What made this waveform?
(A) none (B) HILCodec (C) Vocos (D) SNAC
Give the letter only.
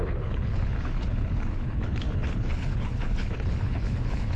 B